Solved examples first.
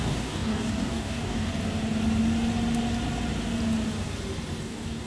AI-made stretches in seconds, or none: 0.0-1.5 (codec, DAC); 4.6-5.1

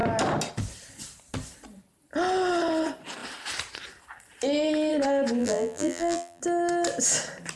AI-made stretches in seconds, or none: 5.4-6.4 (vocoder, BigVGAN v2)

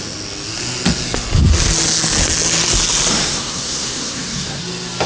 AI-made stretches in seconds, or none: 3.1-4.6 (codec, SNAC)

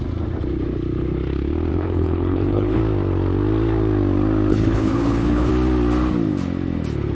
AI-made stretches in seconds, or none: 1.7-2.8 (codec, HILCodec); 4.5-5.5

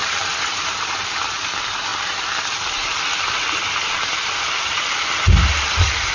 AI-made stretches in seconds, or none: none

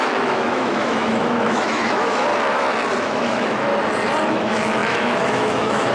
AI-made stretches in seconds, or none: 0.0-2.3 (autoencoder, DAC-VAE); 3.0-3.7; 4.3-5.9